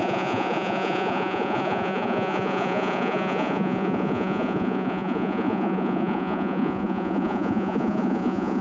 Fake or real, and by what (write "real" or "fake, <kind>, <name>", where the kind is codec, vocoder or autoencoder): fake, vocoder, Vocos